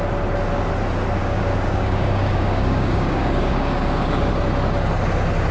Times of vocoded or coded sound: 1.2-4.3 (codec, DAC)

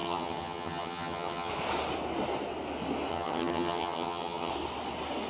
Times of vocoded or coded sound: 0.0-1.5 (vocoder, HiFi-GAN); 3.1-4.5

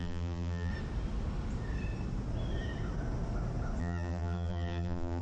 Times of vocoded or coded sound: 0.0-0.7 (vocoder, BigVGAN v2); 3.8-5.2

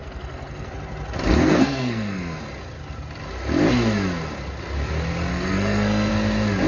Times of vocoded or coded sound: 0.0-0.7 (codec, SNAC); 1.3-2.4; 5.3-6.1

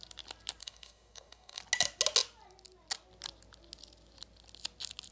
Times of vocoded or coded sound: 0.6-1.6 (codec, DAC)